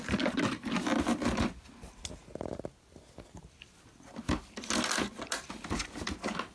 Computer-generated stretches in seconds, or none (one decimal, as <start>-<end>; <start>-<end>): none

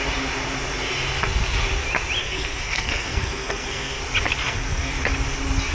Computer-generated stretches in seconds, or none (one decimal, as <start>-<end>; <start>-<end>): 2.2-4.0; 4.4-4.9

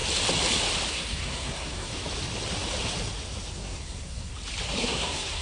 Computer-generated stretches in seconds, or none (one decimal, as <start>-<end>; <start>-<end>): 0.9-1.9; 3.5-4.3; 4.8-5.4

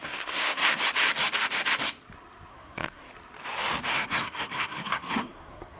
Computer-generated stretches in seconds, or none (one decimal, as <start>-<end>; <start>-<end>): 0.0-0.8; 2.5-3.1; 3.9-5.8

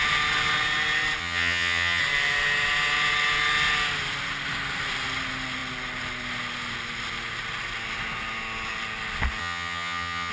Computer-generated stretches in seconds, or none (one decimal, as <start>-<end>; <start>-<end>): 1.2-2.0; 9.4-10.3